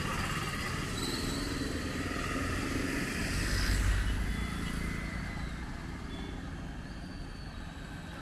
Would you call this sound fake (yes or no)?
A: no